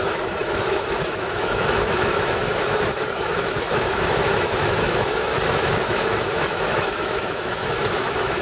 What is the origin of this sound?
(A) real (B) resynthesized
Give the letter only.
B